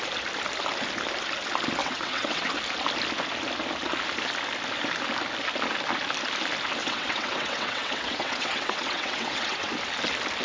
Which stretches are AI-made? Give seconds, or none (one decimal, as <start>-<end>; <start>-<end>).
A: 1.8-2.5; 6.8-9.7